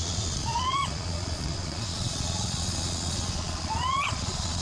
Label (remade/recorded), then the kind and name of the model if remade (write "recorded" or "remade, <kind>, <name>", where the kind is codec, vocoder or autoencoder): remade, vocoder, Vocos